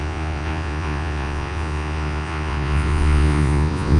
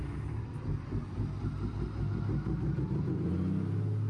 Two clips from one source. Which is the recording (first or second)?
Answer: second